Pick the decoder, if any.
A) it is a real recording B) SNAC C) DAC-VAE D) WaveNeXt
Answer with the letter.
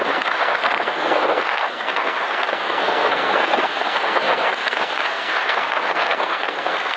B